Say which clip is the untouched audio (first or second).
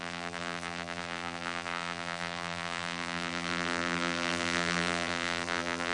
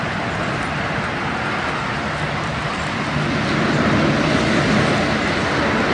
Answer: second